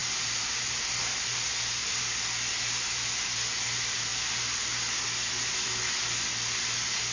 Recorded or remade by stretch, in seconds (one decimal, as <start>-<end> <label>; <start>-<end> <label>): 0.0-2.0 remade; 2.0-7.1 recorded